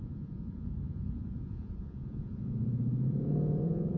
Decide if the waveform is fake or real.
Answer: fake